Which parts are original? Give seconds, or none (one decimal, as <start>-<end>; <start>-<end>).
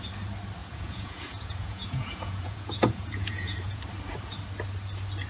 0.0-0.6; 3.8-5.3